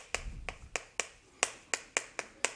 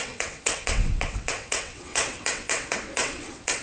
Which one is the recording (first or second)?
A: first